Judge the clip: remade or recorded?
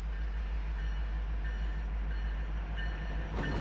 recorded